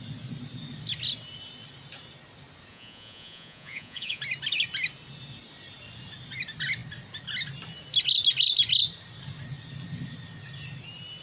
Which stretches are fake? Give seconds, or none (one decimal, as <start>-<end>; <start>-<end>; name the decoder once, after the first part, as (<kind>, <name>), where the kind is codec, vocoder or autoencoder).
2.7-4.2 (vocoder, Vocos)